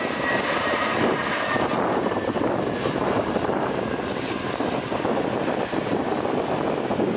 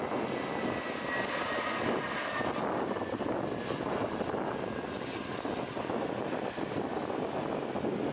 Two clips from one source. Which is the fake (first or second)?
first